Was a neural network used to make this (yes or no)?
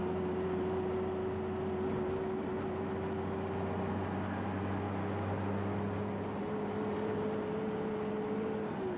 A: no